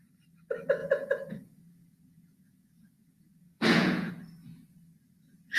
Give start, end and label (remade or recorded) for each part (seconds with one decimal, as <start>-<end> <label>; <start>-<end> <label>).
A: 0.0-0.8 recorded; 0.8-4.1 remade; 4.1-5.6 recorded